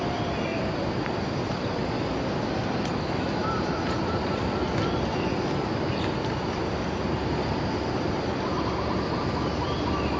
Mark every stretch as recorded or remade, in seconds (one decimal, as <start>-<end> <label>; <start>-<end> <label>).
0.0-0.5 recorded; 0.5-1.2 remade; 1.2-3.4 recorded; 3.4-4.4 remade; 4.4-10.2 recorded